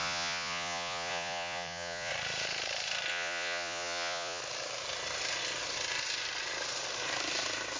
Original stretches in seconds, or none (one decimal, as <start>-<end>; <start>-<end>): 2.1-3.1; 4.4-7.8